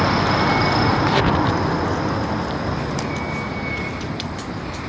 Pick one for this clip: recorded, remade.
recorded